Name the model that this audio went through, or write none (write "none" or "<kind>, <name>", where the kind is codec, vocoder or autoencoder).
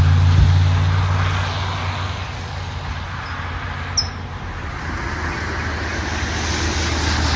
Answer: none